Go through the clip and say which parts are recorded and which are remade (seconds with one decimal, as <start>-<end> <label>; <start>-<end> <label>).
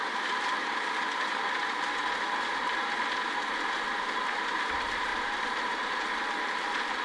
0.0-2.0 remade; 2.0-3.9 recorded; 3.9-7.0 remade